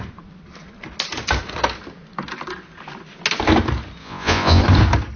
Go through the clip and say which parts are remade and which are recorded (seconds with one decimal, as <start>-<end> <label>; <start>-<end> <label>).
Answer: 0.0-4.0 recorded; 4.0-4.6 remade; 4.6-5.2 recorded